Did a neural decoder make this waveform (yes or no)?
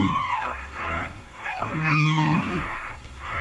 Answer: yes